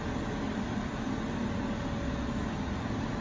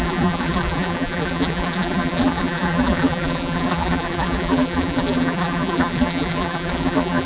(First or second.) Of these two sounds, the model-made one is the second